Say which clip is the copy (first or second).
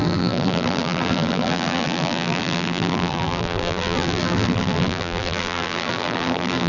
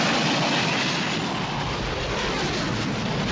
first